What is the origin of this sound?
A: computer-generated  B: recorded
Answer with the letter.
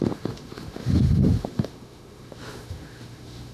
A